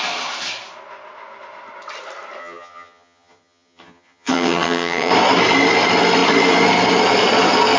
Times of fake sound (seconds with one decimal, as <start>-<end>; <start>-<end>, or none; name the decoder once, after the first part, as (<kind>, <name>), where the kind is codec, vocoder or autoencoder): 2.4-5.1 (vocoder, HiFi-GAN)